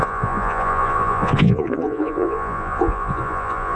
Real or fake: fake